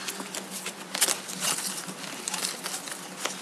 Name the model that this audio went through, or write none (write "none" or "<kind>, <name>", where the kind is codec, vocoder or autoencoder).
none